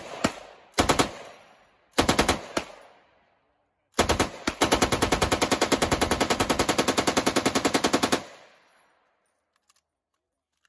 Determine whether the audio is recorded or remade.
recorded